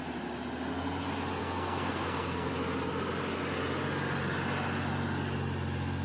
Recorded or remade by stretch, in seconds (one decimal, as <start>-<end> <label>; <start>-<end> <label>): 0.0-1.4 recorded; 1.4-2.5 remade; 2.5-6.0 recorded